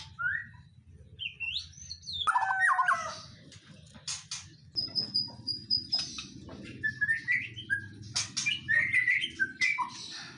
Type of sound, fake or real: real